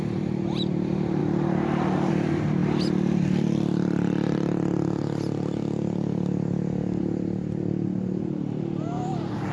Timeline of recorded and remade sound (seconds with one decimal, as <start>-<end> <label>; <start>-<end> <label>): 0.0-1.2 remade; 1.2-2.1 recorded; 2.1-2.6 remade; 2.6-7.0 recorded; 7.0-9.5 remade